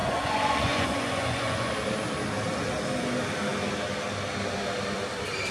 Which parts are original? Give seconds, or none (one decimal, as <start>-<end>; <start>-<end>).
1.7-5.5